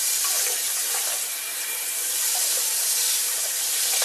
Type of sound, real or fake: fake